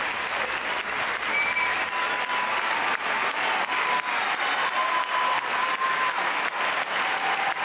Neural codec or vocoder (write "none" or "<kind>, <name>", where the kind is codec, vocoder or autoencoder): none